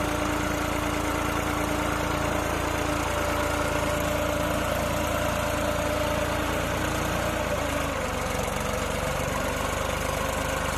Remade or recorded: recorded